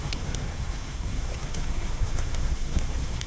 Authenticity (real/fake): fake